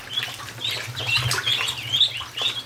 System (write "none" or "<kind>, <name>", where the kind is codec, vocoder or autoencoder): none